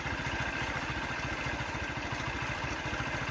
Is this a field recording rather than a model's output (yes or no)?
yes